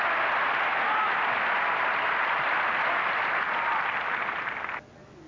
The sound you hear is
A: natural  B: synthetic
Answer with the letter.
A